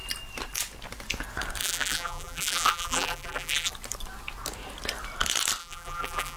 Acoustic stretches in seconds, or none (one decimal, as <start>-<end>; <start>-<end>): 0.0-1.6; 3.7-5.6